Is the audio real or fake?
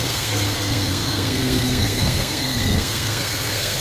fake